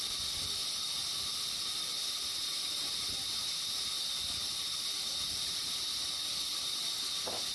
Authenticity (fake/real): real